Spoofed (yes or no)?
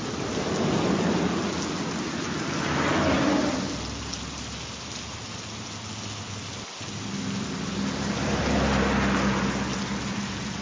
no